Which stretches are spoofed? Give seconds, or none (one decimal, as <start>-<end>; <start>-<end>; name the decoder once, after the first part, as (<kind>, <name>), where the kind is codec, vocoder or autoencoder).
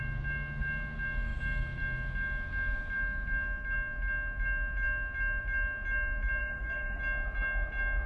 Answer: 6.4-7.0 (codec, DAC)